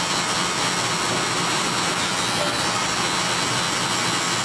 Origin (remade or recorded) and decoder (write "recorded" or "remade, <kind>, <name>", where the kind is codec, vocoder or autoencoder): recorded